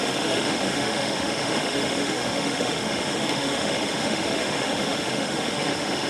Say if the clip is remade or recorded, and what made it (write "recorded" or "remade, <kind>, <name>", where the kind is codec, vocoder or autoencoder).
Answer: remade, autoencoder, DAC-VAE